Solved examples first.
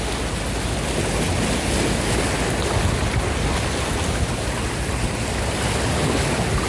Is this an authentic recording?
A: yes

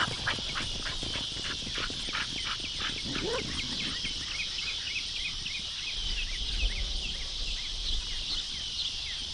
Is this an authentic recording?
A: yes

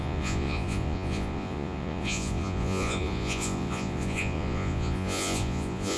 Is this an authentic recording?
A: no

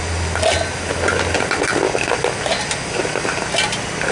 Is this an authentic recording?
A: yes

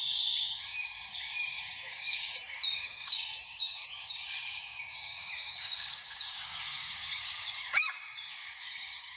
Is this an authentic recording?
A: no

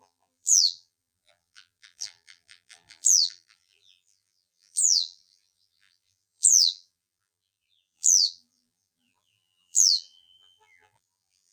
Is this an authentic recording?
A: no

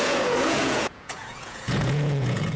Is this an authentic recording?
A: no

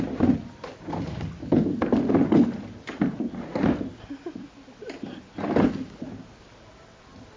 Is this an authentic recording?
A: yes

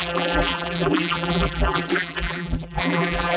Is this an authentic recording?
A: no